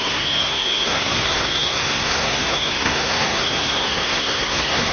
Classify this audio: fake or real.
fake